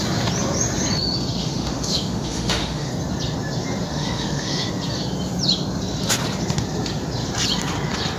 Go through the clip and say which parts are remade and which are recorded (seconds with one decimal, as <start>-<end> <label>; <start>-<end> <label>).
0.0-1.4 recorded; 1.4-2.9 remade; 2.9-3.9 recorded; 3.9-4.7 remade; 4.7-8.2 recorded